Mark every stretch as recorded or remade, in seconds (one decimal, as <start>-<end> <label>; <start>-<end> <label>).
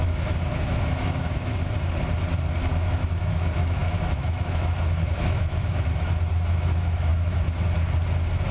0.0-1.5 remade; 1.5-2.7 recorded; 2.7-7.1 remade; 7.1-8.5 recorded